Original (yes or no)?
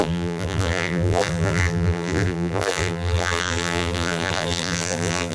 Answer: no